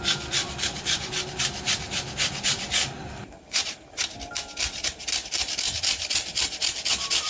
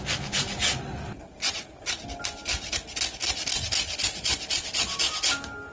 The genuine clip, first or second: second